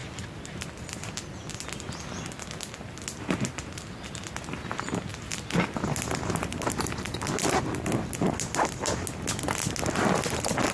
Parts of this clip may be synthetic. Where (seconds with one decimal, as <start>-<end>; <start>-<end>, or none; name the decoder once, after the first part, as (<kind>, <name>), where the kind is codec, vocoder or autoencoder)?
none